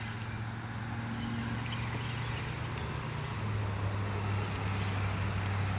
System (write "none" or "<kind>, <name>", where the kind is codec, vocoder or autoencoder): none